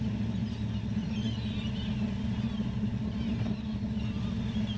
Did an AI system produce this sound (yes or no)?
no